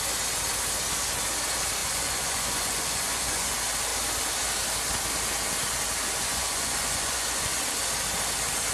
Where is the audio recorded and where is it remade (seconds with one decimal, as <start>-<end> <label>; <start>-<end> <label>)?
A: 0.0-1.8 recorded; 1.8-3.5 remade; 3.5-6.3 recorded; 6.3-7.6 remade; 7.6-8.7 recorded